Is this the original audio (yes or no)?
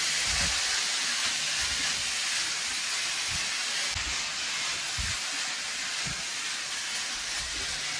yes